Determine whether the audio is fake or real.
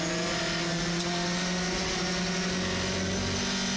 real